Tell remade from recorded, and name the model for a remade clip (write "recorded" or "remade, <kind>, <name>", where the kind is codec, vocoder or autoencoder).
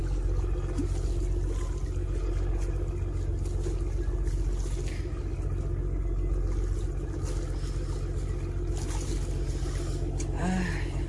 recorded